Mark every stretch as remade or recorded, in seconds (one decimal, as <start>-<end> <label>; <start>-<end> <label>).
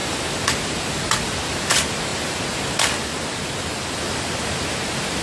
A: 0.0-5.2 recorded